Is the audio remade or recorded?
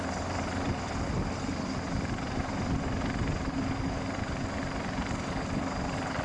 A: recorded